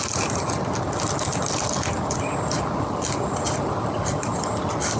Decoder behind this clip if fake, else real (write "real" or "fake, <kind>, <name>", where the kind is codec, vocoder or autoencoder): real